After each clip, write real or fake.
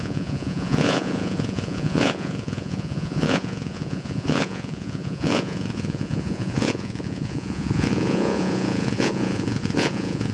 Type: fake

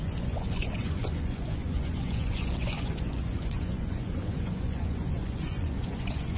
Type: fake